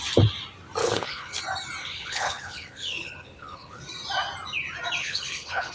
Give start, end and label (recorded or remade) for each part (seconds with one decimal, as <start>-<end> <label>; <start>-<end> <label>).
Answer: 0.0-0.8 recorded; 0.8-1.4 remade; 1.4-1.8 recorded; 1.8-3.8 remade; 3.8-5.0 recorded; 5.0-5.7 remade